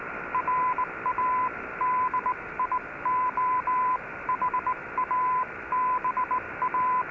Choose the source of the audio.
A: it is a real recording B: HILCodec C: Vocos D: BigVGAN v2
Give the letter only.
A